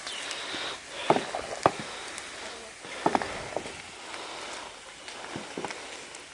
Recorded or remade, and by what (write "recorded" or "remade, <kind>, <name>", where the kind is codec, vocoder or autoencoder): recorded